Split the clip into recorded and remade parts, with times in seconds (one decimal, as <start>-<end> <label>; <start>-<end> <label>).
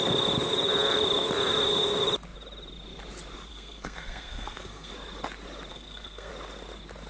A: 0.0-3.5 recorded; 3.5-4.9 remade; 4.9-5.7 recorded; 5.7-6.3 remade; 6.3-7.1 recorded